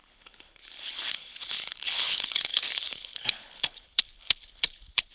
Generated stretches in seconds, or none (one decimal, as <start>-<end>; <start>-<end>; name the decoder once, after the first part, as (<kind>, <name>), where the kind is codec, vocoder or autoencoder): 0.0-5.1 (codec, HILCodec)